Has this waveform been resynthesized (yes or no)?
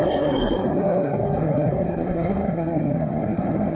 yes